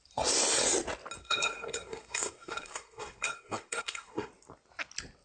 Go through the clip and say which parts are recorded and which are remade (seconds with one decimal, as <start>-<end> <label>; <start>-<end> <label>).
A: 0.0-1.2 recorded; 1.2-4.3 remade; 4.3-5.2 recorded